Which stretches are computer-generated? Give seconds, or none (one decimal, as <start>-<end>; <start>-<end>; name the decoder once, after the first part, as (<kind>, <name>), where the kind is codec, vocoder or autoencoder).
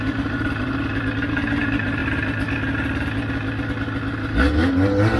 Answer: 0.0-2.0 (vocoder, BigVGAN v2)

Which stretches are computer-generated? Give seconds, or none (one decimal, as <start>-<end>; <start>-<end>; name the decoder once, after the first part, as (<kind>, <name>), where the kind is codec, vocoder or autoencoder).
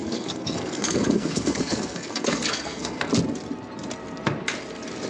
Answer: 0.0-3.1 (codec, SNAC)